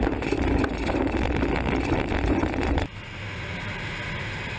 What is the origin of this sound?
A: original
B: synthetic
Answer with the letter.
A